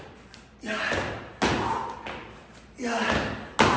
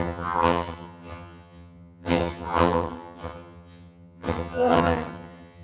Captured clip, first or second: first